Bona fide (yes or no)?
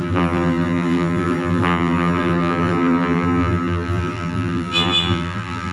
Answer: no